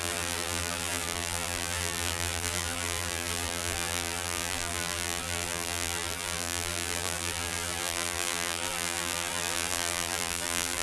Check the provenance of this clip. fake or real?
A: fake